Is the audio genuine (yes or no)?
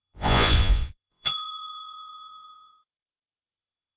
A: no